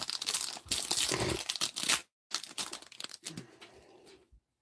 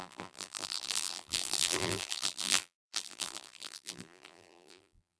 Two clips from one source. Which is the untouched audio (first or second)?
first